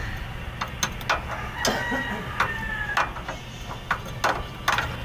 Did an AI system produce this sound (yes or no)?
no